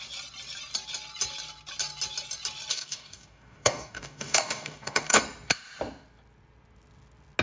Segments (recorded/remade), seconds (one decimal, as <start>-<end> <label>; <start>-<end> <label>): 0.0-2.7 recorded; 2.7-5.2 remade; 5.2-7.4 recorded